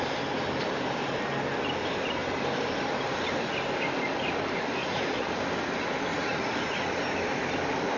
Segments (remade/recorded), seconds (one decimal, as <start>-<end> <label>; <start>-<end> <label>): 0.0-4.8 recorded; 4.8-5.4 remade; 5.4-6.1 recorded; 6.1-7.0 remade; 7.0-8.0 recorded